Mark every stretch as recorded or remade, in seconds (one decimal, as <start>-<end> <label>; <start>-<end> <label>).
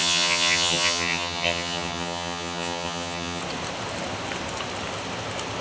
0.0-3.4 remade; 3.4-5.6 recorded